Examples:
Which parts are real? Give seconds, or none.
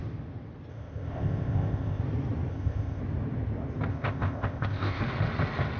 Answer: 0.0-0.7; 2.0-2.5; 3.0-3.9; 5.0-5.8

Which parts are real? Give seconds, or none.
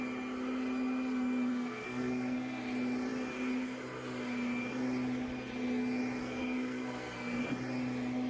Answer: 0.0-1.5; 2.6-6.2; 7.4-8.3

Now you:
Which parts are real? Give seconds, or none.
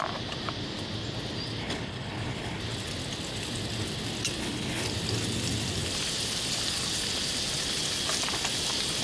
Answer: 0.0-1.6; 2.6-4.4; 4.9-9.0